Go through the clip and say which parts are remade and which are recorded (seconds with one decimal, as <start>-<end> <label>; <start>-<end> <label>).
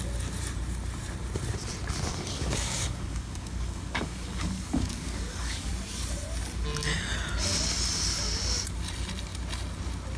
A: 0.0-2.1 recorded; 2.1-5.7 remade; 5.7-10.2 recorded